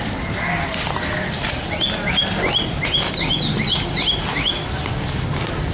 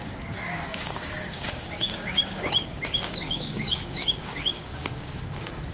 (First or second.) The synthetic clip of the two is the second